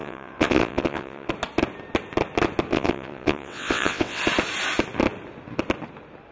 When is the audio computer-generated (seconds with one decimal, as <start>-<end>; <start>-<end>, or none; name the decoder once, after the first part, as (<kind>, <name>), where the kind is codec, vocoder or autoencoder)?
0.0-1.3 (vocoder, WaveNeXt); 2.7-4.2

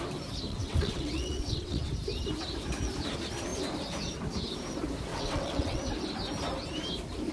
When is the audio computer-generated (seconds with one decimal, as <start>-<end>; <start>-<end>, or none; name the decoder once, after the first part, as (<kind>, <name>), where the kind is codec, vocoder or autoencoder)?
0.5-1.9 (vocoder, WaveNeXt); 5.1-5.8

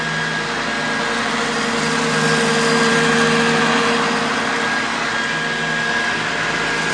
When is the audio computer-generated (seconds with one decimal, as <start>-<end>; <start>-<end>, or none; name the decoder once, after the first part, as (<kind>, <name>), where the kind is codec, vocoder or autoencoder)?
none

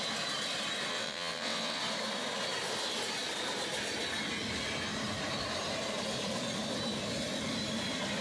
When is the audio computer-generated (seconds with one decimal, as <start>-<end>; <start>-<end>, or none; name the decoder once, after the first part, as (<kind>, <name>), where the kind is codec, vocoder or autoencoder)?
0.9-1.8 (vocoder, WaveNeXt)

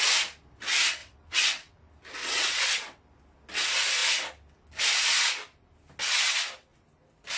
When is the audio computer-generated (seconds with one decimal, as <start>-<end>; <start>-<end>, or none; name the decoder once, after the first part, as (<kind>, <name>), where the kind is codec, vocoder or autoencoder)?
1.0-1.8 (vocoder, WaveNeXt); 2.2-3.0

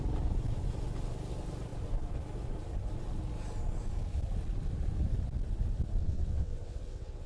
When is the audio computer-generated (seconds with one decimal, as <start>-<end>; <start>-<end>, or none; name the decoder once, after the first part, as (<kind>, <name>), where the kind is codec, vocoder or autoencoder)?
6.0-7.3 (vocoder, WaveNeXt)